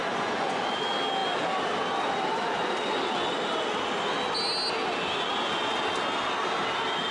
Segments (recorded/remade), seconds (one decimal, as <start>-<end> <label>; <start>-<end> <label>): 0.0-0.6 remade; 0.6-7.1 recorded

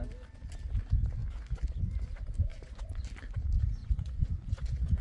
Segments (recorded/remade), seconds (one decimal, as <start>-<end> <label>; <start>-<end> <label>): 0.0-2.5 recorded; 2.5-3.0 remade; 3.0-3.8 recorded; 3.8-5.0 remade

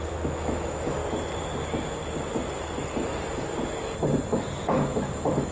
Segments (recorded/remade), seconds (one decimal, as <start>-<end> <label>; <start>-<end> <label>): 0.0-1.0 remade; 1.0-4.3 recorded; 4.3-5.5 remade